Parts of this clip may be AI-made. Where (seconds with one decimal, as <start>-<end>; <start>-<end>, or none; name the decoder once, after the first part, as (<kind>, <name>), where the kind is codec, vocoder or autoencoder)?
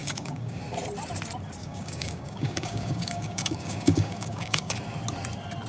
0.0-0.6 (codec, DAC); 1.6-4.7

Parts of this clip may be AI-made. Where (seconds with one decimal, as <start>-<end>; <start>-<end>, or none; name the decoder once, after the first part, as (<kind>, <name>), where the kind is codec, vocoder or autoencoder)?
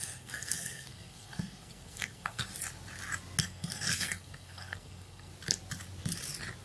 0.0-2.5 (codec, SNAC); 3.4-5.3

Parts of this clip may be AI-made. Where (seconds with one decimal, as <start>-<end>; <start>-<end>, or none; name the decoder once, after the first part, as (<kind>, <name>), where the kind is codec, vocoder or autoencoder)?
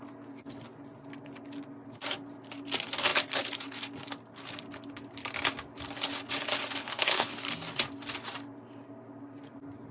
6.8-7.3 (codec, HILCodec)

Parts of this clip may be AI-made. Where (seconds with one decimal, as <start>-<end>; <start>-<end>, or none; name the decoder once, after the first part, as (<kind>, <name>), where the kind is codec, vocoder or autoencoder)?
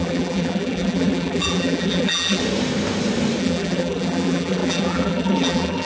0.0-2.4 (vocoder, BigVGAN v2); 3.4-5.9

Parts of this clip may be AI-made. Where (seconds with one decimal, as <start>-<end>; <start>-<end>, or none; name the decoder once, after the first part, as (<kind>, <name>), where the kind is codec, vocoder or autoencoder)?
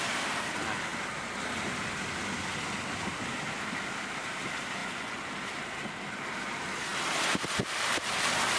4.8-5.3 (vocoder, Vocos)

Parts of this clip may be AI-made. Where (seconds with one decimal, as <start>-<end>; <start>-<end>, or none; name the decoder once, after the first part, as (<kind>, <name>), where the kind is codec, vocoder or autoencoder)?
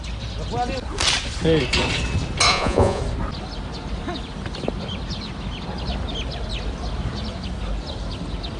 2.5-3.0 (vocoder, Vocos)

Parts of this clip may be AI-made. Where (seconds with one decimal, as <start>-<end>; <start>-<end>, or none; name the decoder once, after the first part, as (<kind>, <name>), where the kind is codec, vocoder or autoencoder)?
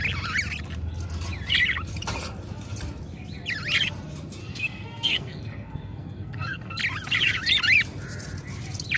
4.4-6.8 (codec, SNAC)